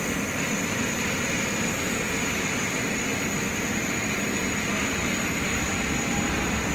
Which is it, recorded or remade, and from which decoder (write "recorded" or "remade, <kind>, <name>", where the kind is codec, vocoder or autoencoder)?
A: recorded